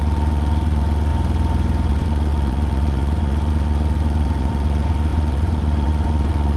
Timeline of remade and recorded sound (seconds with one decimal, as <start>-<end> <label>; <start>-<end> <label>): 0.0-1.1 remade; 1.1-1.9 recorded; 1.9-6.6 remade